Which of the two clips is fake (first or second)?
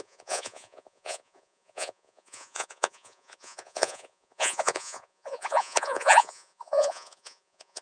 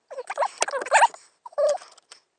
first